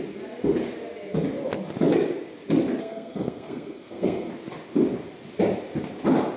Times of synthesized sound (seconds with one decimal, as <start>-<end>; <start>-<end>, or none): 2.8-4.3

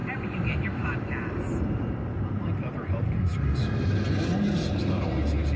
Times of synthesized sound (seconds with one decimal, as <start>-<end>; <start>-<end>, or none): 0.0-3.4

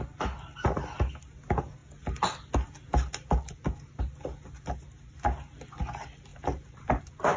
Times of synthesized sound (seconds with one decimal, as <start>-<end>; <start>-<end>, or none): none

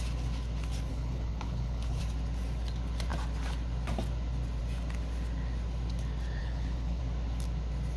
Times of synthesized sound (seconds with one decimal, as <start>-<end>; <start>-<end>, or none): 0.9-2.0; 6.4-7.0

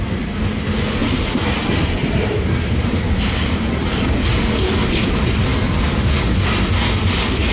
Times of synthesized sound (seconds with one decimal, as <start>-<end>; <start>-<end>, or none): 1.0-3.6

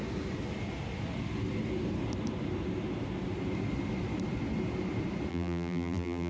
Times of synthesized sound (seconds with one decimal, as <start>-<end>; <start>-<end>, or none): 5.3-6.3

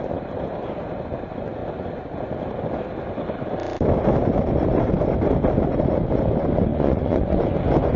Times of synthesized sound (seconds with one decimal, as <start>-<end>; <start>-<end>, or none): 6.7-7.4

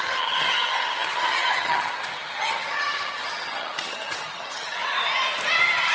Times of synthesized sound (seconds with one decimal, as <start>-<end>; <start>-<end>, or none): 0.0-4.8